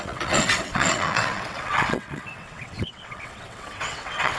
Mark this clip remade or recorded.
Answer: remade